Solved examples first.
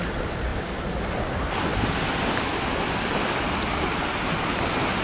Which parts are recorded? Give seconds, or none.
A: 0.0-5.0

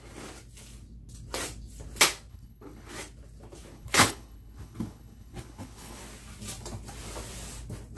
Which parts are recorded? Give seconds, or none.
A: 0.0-2.3; 2.9-3.7; 6.0-8.0

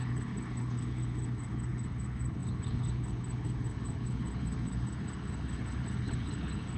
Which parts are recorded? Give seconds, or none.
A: none

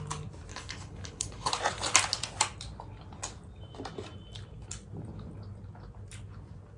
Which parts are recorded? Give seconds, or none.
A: 0.0-0.5; 1.5-6.8

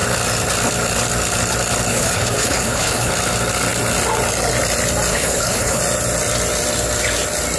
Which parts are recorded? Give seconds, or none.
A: 0.0-1.9; 3.1-5.1; 5.8-7.6